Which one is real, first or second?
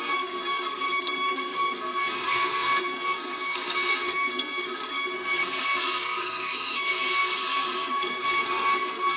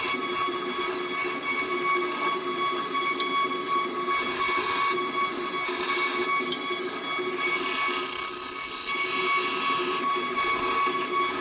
second